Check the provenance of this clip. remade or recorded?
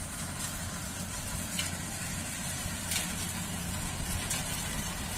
recorded